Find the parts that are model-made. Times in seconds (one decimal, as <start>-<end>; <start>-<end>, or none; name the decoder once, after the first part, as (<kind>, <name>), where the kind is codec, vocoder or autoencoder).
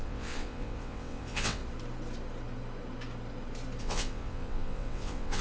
0.0-1.6 (vocoder, WaveNeXt); 3.8-5.4